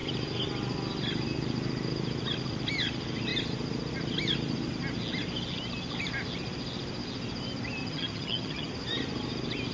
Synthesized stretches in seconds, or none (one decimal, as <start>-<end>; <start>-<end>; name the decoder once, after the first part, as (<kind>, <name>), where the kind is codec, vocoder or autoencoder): 7.8-8.7 (vocoder, HiFi-GAN)